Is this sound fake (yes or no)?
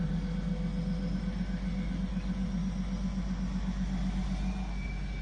no